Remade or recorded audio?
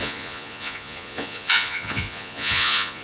remade